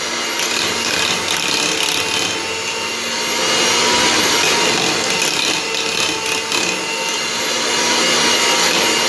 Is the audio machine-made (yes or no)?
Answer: no